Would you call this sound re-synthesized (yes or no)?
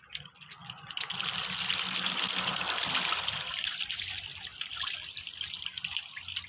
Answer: no